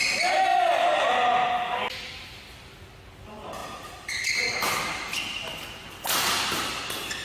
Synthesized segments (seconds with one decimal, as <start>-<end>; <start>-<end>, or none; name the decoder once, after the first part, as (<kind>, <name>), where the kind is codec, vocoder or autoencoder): 0.5-1.1 (vocoder, BigVGAN v2); 3.6-4.2